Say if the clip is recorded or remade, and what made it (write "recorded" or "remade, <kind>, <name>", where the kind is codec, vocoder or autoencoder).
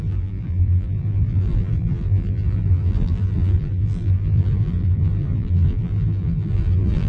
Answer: remade, vocoder, BigVGAN v2